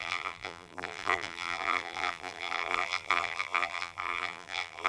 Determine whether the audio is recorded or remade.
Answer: remade